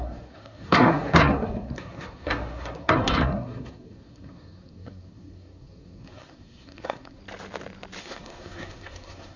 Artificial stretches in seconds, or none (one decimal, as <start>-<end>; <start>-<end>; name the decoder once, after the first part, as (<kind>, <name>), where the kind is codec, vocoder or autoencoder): 0.0-7.2 (codec, SNAC); 8.0-9.4